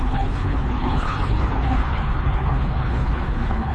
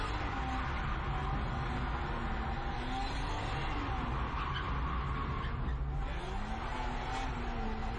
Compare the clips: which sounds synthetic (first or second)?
first